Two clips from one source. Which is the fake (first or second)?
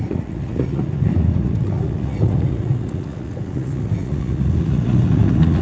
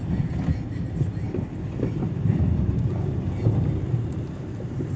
first